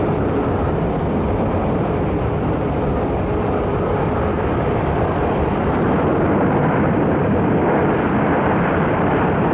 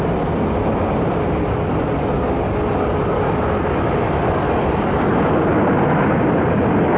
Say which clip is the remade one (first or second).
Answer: first